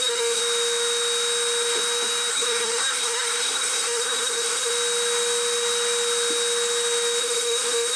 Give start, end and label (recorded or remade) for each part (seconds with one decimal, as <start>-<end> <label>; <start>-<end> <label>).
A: 0.0-0.4 remade; 0.4-2.3 recorded; 2.3-4.7 remade; 4.7-7.2 recorded; 7.2-8.0 remade